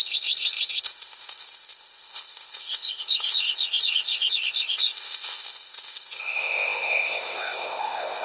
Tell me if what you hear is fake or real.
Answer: fake